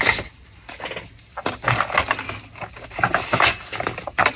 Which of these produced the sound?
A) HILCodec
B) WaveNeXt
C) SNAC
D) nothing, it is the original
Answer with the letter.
D